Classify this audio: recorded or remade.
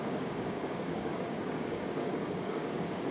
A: remade